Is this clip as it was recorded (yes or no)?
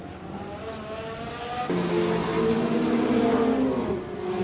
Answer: yes